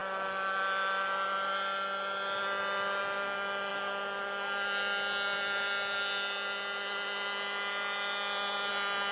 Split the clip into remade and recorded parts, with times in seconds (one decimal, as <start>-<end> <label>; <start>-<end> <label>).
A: 0.0-9.1 recorded